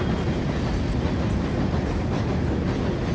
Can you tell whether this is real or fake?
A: real